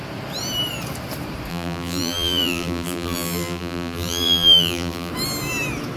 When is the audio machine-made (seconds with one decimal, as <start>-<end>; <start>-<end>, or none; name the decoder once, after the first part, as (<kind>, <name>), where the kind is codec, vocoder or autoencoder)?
1.5-5.1 (vocoder, BigVGAN v2)